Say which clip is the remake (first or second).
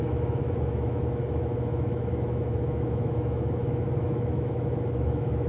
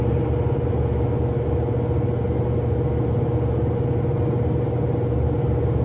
first